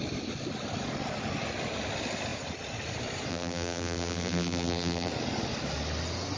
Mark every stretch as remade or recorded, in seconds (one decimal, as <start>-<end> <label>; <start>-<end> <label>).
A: 0.0-3.3 recorded; 3.3-5.1 remade; 5.1-6.4 recorded